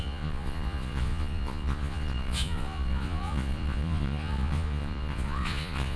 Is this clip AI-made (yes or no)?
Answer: yes